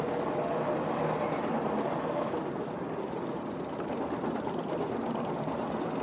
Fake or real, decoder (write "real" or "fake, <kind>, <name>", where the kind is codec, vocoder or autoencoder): real